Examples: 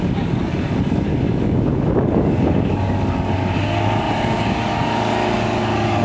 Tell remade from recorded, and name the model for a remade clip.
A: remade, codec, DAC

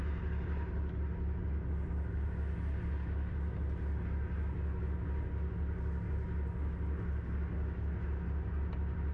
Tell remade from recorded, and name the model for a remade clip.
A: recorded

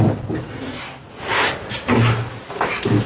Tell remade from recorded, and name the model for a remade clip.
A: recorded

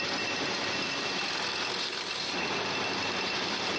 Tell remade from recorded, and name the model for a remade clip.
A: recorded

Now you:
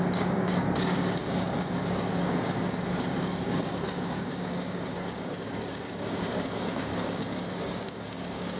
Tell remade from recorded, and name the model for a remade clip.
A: remade, codec, DAC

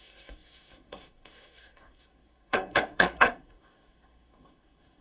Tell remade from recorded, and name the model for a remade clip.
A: remade, codec, SNAC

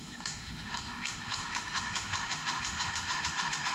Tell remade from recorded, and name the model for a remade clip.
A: remade, autoencoder, DAC-VAE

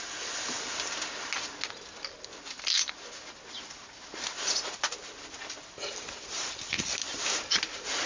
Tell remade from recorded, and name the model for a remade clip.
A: recorded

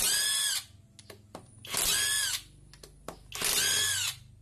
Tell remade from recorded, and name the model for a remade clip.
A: recorded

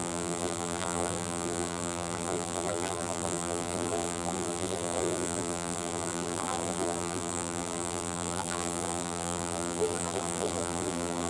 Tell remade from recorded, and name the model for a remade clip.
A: remade, vocoder, BigVGAN v2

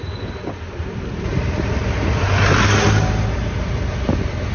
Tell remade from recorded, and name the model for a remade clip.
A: recorded